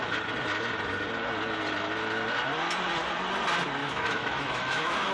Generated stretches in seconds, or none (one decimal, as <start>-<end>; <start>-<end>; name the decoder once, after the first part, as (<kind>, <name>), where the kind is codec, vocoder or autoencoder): 3.8-5.1 (autoencoder, DAC-VAE)